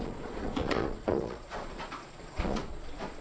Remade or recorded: remade